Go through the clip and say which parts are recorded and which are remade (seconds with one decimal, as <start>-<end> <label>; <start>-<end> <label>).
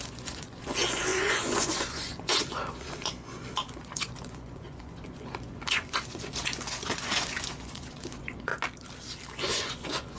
0.0-8.5 remade; 8.5-9.4 recorded; 9.4-10.2 remade